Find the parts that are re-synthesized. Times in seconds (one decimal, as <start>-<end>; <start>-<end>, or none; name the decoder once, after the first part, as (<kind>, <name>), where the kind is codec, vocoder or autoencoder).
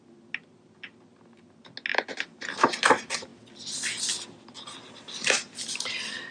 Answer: 1.9-2.8 (vocoder, BigVGAN v2)